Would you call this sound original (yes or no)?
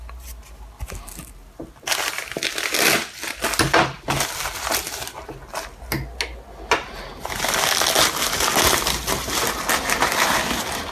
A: yes